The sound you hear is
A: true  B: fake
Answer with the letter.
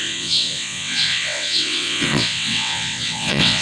B